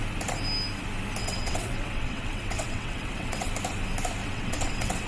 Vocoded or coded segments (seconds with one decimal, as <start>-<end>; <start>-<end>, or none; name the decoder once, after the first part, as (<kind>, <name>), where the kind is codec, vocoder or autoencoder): 1.2-3.5 (vocoder, WaveNeXt); 4.2-5.1